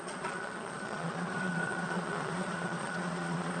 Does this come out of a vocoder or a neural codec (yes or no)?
yes